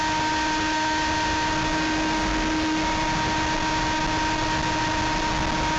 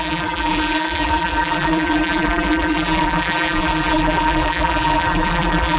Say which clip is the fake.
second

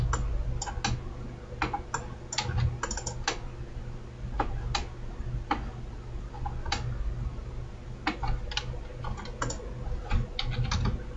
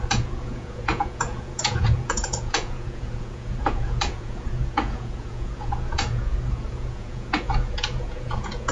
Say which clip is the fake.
second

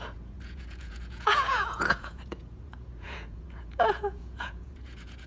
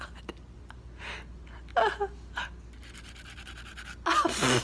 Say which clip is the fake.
first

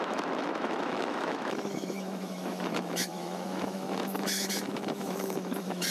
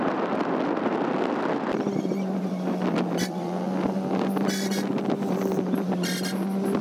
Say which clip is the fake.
first